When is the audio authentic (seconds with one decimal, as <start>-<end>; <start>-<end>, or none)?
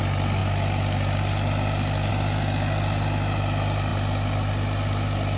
0.0-5.4